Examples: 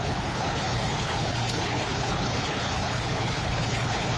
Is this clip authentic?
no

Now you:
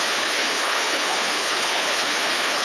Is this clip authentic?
no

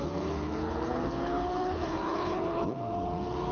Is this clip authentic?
no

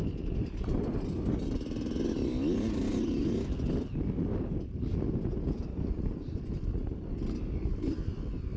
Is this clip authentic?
yes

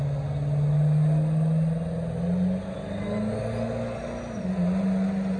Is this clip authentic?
yes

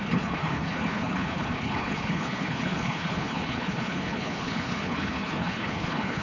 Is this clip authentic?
no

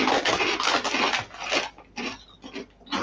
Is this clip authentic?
yes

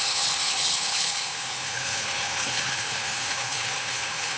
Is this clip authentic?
no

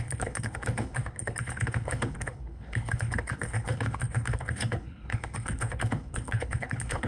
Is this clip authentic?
no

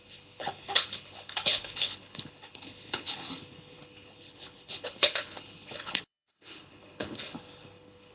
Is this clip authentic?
no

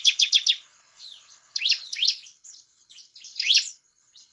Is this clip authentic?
no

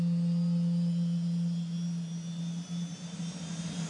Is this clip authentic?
yes